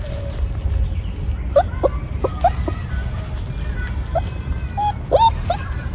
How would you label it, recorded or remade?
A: recorded